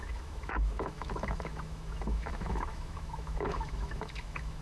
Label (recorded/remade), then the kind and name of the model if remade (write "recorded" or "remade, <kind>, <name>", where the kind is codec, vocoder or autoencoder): remade, autoencoder, DAC-VAE